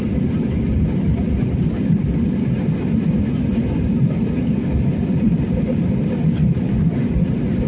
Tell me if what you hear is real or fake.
real